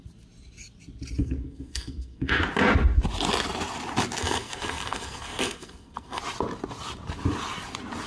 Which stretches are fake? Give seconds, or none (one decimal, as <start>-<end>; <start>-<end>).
1.2-2.4; 4.2-6.2